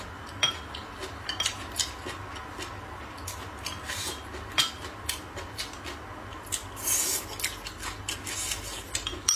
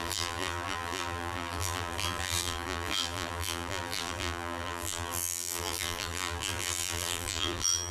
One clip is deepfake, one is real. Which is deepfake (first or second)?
second